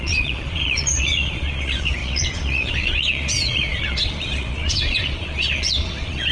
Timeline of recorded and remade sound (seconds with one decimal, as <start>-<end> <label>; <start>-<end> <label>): 0.0-6.3 remade